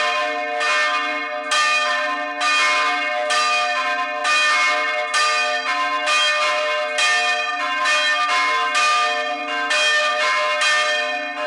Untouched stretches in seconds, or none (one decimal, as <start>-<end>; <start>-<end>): 0.0-11.5